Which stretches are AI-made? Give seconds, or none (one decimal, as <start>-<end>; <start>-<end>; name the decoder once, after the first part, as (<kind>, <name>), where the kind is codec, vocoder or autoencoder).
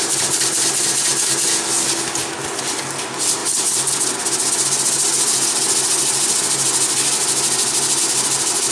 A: none